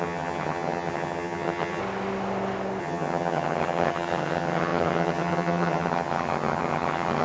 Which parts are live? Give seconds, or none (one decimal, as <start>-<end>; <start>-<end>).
1.8-2.8